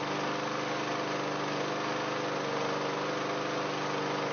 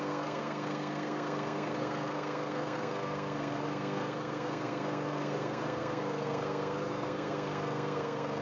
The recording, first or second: first